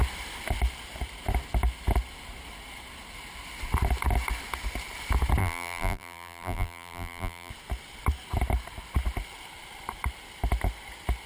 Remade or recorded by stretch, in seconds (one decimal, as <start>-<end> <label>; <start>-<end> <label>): 0.0-5.4 recorded; 5.4-7.5 remade; 7.5-11.3 recorded